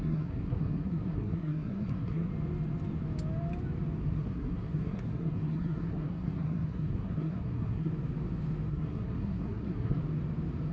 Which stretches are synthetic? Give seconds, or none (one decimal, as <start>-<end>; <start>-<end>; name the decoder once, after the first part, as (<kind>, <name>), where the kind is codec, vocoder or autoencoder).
0.0-2.3 (codec, SNAC); 4.0-7.9; 8.7-10.0